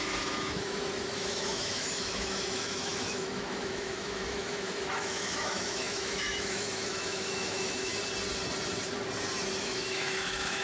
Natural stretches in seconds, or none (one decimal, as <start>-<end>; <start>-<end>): 7.9-9.6